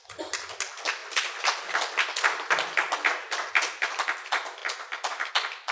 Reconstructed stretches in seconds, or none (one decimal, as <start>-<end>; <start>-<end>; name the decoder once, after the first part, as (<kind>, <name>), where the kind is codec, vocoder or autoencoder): none